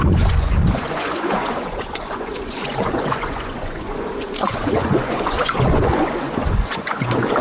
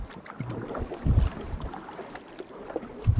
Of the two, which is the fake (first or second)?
first